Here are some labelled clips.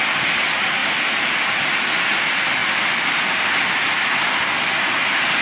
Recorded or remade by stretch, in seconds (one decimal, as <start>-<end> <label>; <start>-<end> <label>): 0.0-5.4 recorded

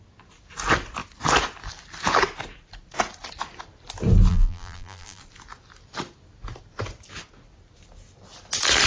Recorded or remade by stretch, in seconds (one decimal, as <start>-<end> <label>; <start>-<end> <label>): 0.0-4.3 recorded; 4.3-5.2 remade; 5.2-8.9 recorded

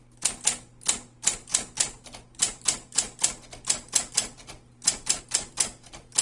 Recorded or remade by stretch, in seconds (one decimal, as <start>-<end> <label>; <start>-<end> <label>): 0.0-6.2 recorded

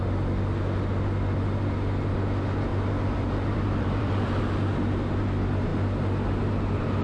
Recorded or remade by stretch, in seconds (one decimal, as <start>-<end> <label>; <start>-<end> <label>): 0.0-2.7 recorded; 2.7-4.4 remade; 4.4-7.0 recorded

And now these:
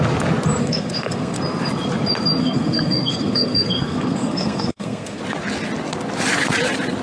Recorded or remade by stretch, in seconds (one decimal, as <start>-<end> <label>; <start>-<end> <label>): 0.0-0.6 recorded; 0.6-1.4 remade; 1.4-2.4 recorded; 2.4-5.2 remade; 5.2-7.0 recorded

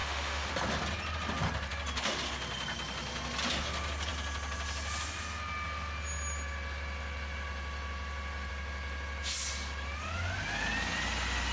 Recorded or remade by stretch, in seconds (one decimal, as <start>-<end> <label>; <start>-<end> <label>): 0.0-0.5 remade; 0.5-11.5 recorded